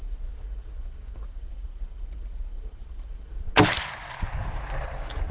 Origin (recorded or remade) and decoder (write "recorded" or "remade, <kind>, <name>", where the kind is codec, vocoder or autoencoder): recorded